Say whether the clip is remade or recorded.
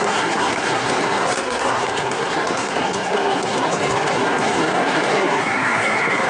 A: remade